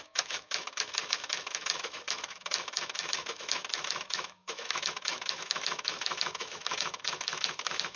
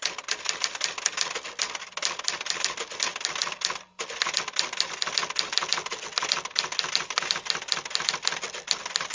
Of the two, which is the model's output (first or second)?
first